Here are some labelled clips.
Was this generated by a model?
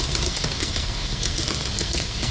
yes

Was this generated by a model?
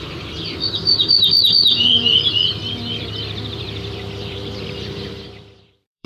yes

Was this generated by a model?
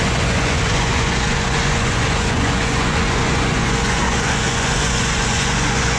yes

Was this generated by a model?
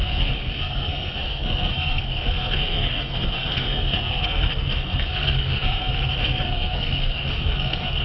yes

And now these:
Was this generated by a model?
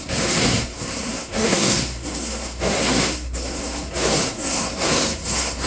yes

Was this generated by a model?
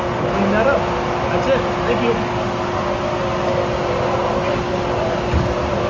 no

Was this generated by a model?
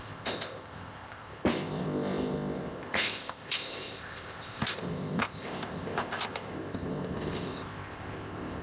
yes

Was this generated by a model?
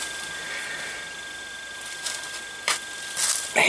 yes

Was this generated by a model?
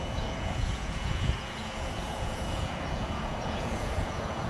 yes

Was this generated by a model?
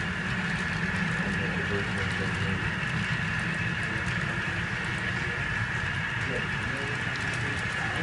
no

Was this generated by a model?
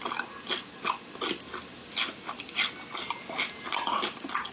yes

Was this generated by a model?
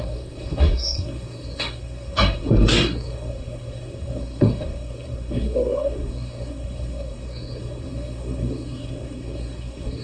yes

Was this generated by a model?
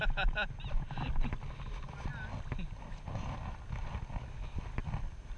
no